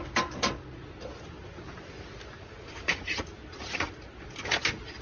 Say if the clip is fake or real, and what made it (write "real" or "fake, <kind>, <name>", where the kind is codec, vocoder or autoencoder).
real